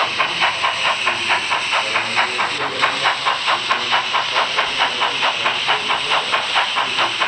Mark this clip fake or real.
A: real